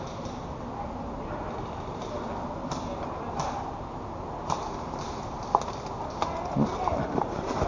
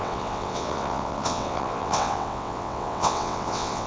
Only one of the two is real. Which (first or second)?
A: first